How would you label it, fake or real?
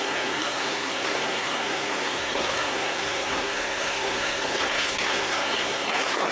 fake